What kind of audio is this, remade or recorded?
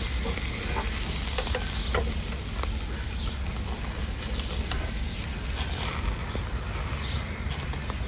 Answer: recorded